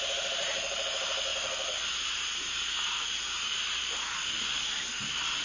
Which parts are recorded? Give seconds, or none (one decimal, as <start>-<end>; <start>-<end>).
1.3-1.9; 3.8-5.4